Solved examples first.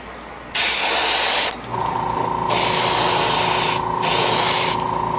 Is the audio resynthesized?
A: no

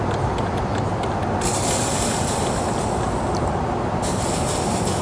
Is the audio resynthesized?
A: no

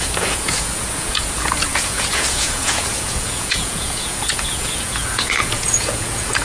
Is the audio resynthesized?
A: yes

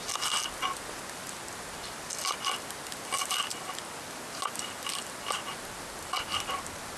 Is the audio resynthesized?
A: no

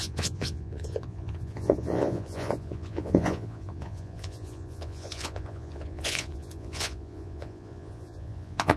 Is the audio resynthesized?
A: yes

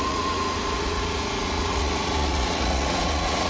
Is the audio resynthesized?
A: yes